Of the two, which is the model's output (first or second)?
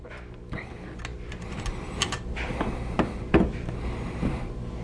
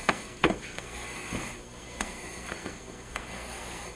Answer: second